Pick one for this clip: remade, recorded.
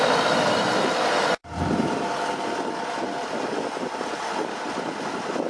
remade